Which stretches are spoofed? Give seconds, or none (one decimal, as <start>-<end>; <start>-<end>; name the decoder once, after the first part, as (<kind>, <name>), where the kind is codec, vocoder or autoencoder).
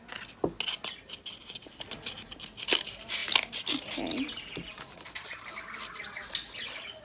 none